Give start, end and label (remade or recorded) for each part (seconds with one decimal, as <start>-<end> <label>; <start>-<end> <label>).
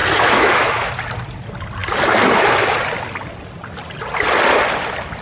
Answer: 0.0-0.9 remade; 0.9-5.2 recorded